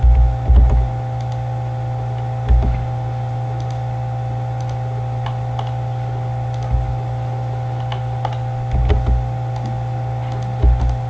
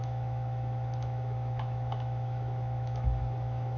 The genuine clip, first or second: first